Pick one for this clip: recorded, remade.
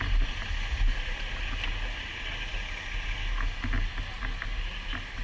recorded